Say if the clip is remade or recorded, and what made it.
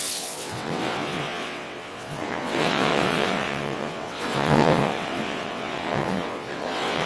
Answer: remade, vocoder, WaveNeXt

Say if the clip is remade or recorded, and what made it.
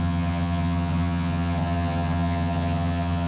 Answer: remade, vocoder, HiFi-GAN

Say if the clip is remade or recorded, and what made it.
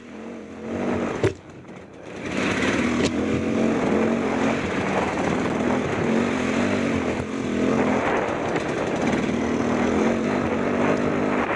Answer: recorded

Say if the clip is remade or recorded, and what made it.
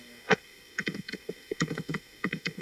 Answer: remade, codec, SNAC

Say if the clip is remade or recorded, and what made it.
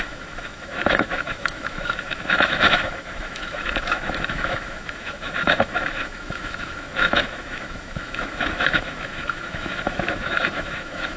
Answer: remade, autoencoder, DAC-VAE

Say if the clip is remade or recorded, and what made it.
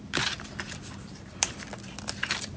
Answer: remade, vocoder, BigVGAN v2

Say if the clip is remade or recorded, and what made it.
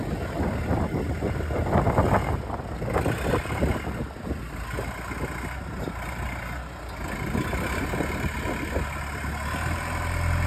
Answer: recorded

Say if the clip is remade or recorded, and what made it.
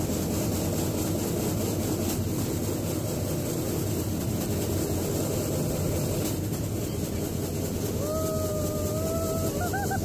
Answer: recorded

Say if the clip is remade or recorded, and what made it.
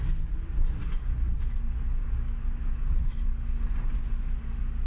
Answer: recorded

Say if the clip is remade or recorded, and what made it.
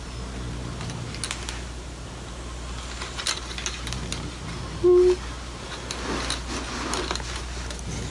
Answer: recorded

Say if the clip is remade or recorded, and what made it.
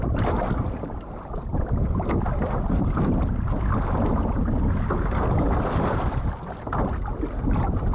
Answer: recorded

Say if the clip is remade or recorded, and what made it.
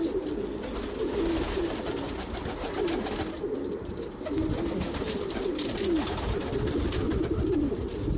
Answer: recorded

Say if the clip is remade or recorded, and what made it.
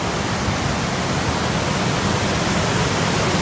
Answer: recorded